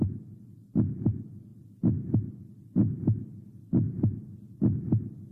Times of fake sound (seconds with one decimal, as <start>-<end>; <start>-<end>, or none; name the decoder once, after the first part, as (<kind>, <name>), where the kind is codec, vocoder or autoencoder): 0.0-5.3 (vocoder, BigVGAN v2)